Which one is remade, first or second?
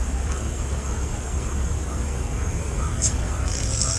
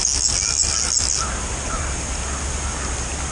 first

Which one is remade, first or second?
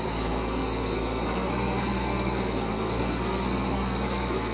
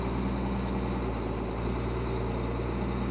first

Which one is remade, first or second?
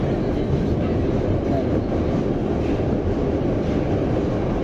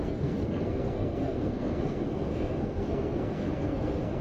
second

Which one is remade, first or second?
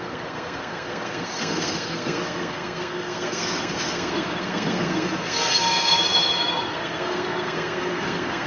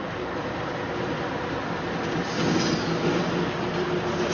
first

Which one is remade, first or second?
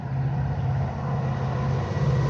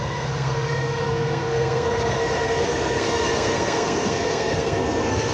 second